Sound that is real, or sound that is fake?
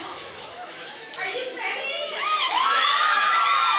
fake